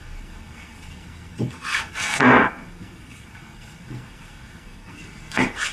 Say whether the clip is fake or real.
fake